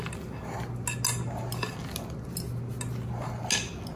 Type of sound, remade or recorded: recorded